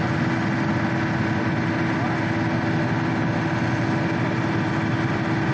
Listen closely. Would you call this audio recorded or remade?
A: recorded